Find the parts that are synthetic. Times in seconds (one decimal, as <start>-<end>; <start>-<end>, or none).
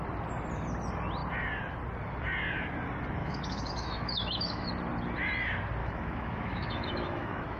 3.2-4.7; 5.8-7.6